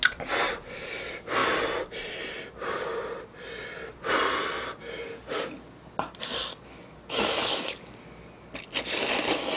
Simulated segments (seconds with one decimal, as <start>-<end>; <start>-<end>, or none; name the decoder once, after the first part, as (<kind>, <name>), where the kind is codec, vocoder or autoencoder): 6.3-8.0 (codec, DAC)